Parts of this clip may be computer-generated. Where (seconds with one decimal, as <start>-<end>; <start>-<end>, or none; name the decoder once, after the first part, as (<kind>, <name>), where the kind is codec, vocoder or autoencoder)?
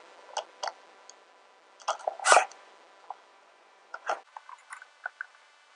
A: 2.2-2.7 (vocoder, Vocos); 3.3-4.2